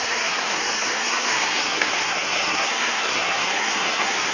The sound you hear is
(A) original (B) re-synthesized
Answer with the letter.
B